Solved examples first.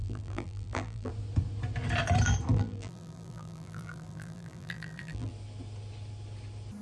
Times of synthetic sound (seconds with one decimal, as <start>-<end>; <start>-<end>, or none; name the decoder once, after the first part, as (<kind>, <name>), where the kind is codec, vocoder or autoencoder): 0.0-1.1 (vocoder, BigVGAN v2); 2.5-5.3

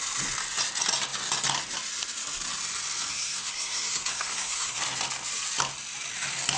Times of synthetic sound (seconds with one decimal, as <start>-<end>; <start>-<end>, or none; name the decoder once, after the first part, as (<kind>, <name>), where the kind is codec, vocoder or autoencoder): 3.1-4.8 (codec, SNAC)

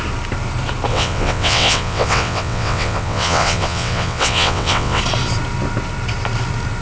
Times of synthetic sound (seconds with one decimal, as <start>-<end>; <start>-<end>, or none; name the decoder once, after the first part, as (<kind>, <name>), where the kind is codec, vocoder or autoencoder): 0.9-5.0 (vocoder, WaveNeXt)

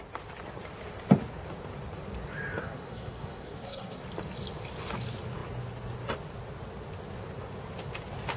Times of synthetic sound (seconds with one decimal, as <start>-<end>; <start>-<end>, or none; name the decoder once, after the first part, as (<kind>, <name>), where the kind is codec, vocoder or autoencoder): 2.6-4.0 (codec, SNAC)